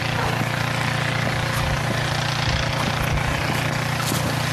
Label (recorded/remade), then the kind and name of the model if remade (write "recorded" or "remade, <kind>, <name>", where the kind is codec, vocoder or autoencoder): recorded